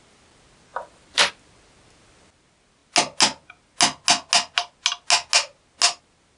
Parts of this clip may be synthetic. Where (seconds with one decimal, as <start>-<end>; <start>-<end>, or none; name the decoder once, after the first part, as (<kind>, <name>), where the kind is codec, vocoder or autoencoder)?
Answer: 0.7-1.3 (vocoder, BigVGAN v2)